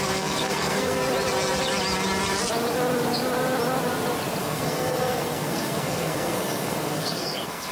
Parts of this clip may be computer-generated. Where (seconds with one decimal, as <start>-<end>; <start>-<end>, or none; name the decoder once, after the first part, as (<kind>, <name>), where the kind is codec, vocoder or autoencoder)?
0.0-1.0 (codec, SNAC); 4.4-7.7